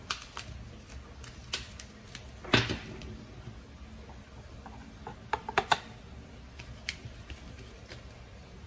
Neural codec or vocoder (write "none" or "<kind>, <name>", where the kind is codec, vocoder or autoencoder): none